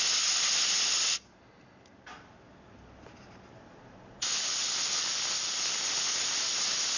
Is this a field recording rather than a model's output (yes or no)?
yes